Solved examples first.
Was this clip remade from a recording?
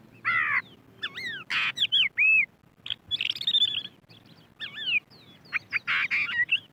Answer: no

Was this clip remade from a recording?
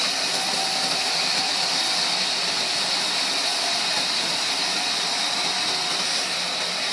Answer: no